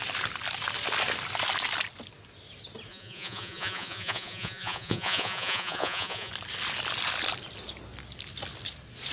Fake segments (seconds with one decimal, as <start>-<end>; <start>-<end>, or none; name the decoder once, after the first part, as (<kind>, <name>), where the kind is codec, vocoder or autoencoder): 2.9-6.3 (vocoder, Vocos)